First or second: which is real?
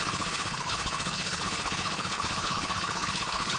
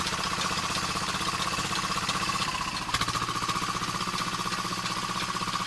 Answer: second